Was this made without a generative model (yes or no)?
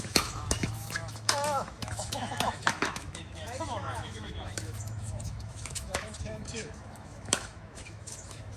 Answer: no